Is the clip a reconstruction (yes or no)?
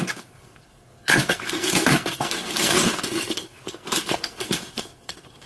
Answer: yes